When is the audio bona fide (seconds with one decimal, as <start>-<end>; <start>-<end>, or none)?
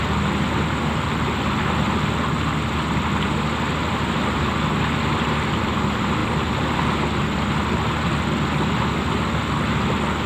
0.0-10.3